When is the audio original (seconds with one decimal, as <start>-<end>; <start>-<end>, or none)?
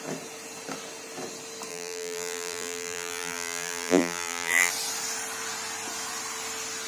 0.0-1.7; 4.7-6.9